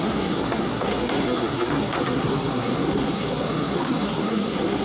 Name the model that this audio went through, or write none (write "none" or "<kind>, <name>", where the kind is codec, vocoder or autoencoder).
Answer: codec, SNAC